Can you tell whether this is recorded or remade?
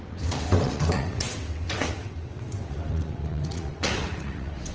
remade